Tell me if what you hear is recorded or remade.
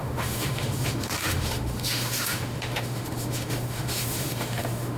remade